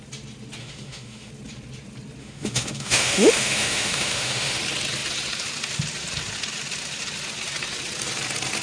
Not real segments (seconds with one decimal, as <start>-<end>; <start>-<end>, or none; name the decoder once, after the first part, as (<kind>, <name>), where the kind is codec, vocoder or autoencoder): 0.6-1.3 (autoencoder, DAC-VAE); 2.2-4.6